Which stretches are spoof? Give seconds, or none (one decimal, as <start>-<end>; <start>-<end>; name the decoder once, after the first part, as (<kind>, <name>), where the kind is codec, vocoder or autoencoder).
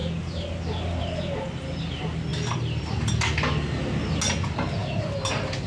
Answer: 2.3-3.1 (vocoder, BigVGAN v2)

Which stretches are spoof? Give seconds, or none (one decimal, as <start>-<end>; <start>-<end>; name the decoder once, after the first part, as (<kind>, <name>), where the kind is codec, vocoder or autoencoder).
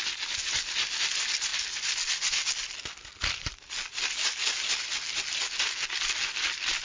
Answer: none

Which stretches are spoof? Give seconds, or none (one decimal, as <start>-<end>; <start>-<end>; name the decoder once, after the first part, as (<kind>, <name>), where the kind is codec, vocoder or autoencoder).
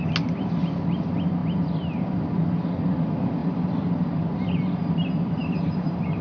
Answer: 3.4-3.9 (vocoder, BigVGAN v2); 5.4-6.2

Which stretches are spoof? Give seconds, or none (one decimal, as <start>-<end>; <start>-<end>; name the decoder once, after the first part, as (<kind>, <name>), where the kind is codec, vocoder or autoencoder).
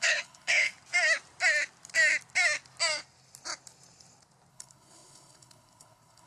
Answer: 0.0-0.7 (codec, HILCodec); 4.5-6.3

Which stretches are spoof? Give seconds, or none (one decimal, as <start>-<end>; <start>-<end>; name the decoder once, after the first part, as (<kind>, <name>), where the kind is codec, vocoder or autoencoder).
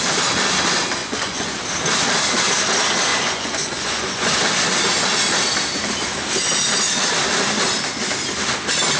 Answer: 1.0-1.6 (vocoder, Vocos); 3.1-4.3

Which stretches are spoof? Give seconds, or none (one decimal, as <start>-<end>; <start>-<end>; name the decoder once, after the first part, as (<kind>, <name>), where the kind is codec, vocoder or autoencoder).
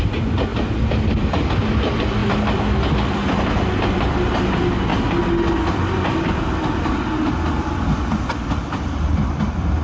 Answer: 0.0-2.2 (vocoder, BigVGAN v2); 2.9-9.8